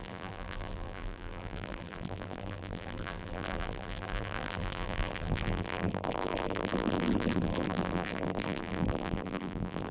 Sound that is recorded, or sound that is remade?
remade